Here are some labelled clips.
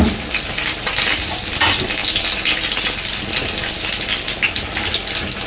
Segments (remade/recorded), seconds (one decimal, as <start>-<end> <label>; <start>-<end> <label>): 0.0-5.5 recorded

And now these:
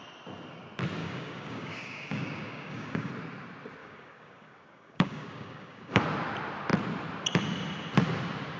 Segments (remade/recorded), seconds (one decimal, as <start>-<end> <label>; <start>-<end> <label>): 0.0-1.0 recorded; 1.0-3.1 remade; 3.1-3.8 recorded; 3.8-6.0 remade; 6.0-8.6 recorded

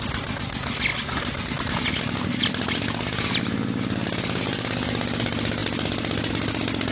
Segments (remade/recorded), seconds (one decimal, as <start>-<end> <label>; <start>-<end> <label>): 0.0-6.9 recorded

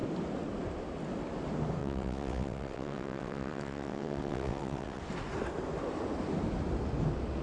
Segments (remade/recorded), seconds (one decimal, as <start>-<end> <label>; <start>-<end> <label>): 0.0-1.8 recorded; 1.8-5.0 remade; 5.0-7.4 recorded

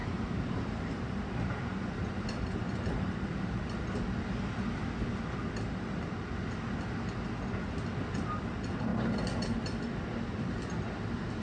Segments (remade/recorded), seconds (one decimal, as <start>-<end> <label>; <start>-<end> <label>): 0.0-3.6 remade; 3.6-11.4 recorded

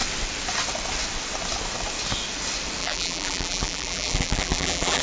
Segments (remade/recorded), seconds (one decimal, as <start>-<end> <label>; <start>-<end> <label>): 0.0-2.8 recorded; 2.8-5.0 remade